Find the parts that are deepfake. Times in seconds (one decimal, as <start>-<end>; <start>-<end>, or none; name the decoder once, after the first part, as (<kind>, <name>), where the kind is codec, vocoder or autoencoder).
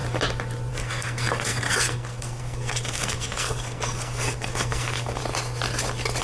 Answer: 0.7-5.2 (codec, SNAC)